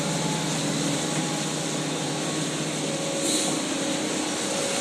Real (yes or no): yes